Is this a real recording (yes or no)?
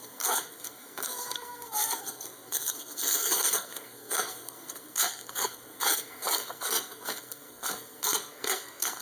no